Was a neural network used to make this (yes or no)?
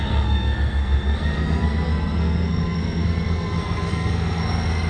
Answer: yes